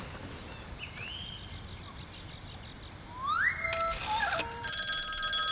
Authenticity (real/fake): real